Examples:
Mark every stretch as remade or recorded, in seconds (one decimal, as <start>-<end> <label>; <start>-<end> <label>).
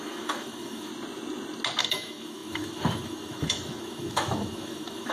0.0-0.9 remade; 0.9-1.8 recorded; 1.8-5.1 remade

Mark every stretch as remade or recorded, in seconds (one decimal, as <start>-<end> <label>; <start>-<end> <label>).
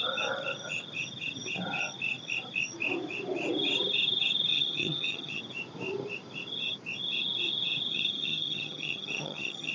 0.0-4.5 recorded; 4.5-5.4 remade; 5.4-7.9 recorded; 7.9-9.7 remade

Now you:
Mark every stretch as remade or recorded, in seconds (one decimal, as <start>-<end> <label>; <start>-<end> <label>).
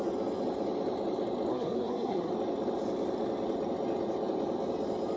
0.0-1.5 recorded; 1.5-2.3 remade; 2.3-5.2 recorded